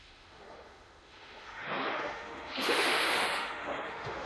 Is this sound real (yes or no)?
no